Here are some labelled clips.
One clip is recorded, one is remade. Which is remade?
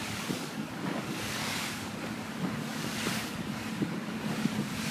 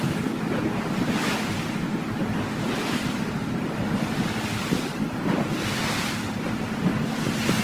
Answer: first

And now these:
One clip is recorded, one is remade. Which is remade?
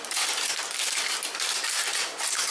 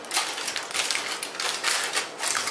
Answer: first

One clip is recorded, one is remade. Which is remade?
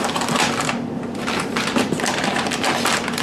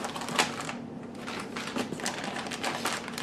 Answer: first